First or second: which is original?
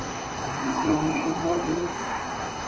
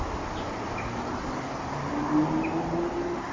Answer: second